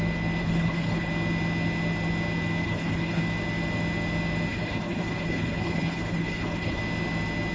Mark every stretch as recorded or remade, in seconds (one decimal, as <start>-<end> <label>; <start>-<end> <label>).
0.0-0.4 recorded; 0.4-1.1 remade; 1.1-2.6 recorded; 2.6-3.2 remade; 3.2-4.5 recorded; 4.5-6.8 remade; 6.8-7.5 recorded